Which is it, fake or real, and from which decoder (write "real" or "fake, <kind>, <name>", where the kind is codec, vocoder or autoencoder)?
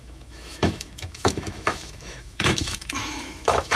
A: fake, autoencoder, DAC-VAE